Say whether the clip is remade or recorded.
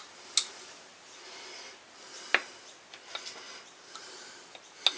recorded